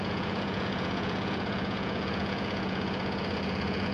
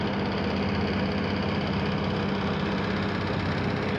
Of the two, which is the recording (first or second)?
second